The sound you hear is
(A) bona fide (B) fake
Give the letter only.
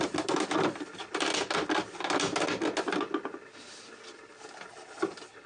A